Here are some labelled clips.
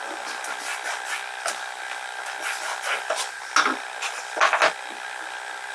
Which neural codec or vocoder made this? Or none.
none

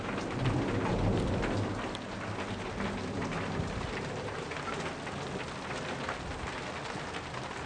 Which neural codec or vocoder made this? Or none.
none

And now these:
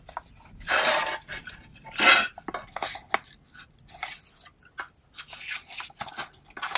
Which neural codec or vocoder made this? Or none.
none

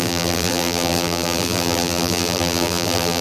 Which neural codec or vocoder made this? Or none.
vocoder, BigVGAN v2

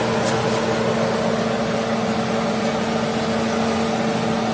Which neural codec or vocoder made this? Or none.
none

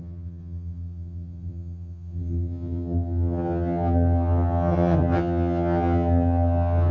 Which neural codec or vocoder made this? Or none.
vocoder, HiFi-GAN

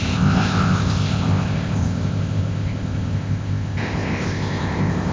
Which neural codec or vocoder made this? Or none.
codec, ZipCodec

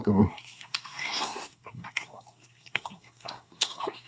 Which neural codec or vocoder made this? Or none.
codec, SNAC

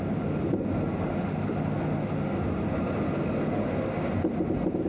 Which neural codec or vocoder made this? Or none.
none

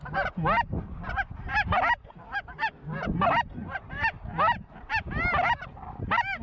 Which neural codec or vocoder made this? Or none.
none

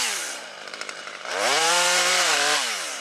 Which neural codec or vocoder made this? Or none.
vocoder, BigVGAN v2